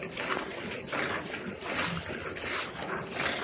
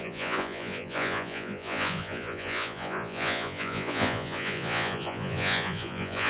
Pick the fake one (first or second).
second